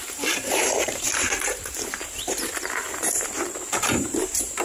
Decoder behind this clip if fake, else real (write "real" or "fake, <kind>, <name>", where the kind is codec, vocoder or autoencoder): fake, vocoder, BigVGAN v2